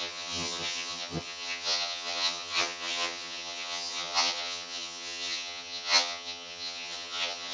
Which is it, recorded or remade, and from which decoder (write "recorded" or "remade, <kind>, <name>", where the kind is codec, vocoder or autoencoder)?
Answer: remade, vocoder, HiFi-GAN